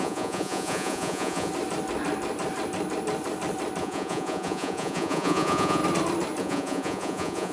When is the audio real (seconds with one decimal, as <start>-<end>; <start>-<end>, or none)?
1.5-3.8; 5.8-6.4